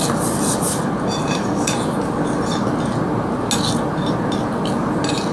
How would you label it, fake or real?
real